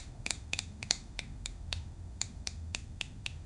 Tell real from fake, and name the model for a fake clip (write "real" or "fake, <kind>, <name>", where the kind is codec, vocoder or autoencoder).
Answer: fake, autoencoder, DAC-VAE